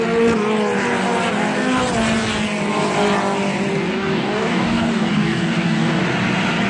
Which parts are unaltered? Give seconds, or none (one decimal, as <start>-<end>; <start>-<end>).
0.0-3.9; 6.0-6.7